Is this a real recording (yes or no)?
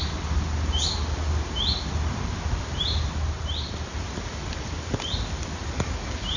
yes